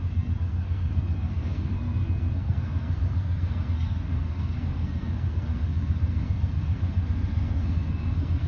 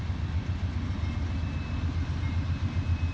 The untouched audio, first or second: second